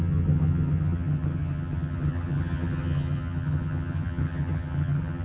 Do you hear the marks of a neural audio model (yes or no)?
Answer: yes